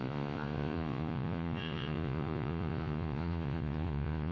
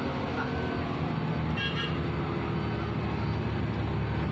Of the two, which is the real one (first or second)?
second